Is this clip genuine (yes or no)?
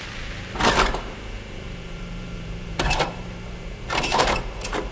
no